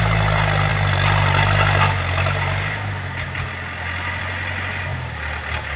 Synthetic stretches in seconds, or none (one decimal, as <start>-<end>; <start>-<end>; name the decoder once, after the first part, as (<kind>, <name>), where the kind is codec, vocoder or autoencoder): none